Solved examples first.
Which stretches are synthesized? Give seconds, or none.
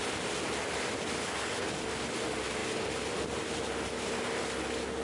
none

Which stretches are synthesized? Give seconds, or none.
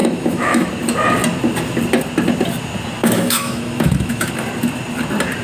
0.0-0.7 (autoencoder, DAC-VAE); 3.0-4.3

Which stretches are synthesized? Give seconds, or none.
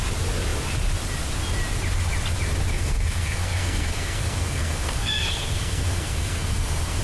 2.7-7.0 (codec, SNAC)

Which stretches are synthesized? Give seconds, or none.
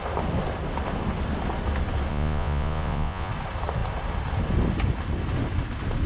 2.1-3.3 (vocoder, Vocos)